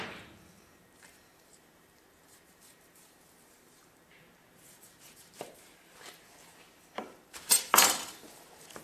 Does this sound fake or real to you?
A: fake